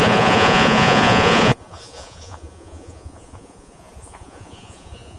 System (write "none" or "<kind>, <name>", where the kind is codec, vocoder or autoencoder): vocoder, Vocos